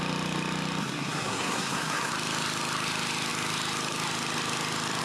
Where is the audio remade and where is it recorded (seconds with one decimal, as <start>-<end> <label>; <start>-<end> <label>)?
0.0-0.8 recorded; 0.8-2.1 remade; 2.1-5.0 recorded